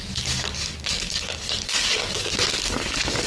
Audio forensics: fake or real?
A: fake